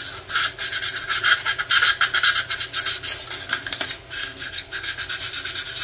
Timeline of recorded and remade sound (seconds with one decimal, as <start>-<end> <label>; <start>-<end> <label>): 0.0-4.2 recorded; 4.2-5.0 remade; 5.0-5.8 recorded